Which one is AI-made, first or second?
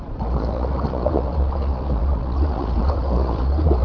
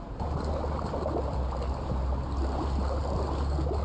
first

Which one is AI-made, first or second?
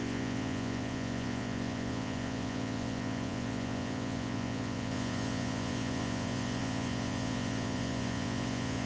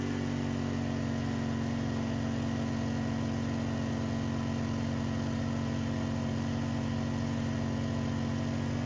first